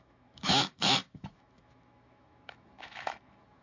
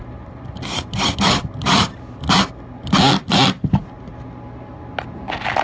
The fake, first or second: first